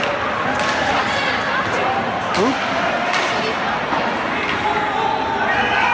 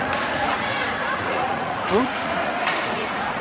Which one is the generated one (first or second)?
second